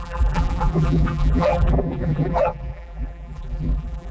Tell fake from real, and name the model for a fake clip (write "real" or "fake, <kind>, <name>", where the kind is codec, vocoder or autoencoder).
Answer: fake, vocoder, BigVGAN v2